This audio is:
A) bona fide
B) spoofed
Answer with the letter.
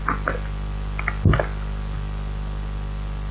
A